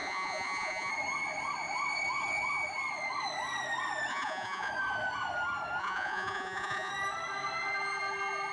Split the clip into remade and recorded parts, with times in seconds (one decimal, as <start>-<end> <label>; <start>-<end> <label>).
0.0-0.9 remade; 0.9-4.1 recorded; 4.1-4.7 remade; 4.7-5.8 recorded; 5.8-6.9 remade; 6.9-8.5 recorded